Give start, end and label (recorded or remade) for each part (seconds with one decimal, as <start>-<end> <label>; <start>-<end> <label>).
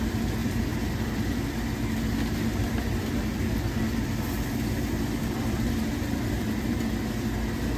0.0-0.4 recorded; 0.4-1.4 remade; 1.4-2.5 recorded; 2.5-6.8 remade; 6.8-7.8 recorded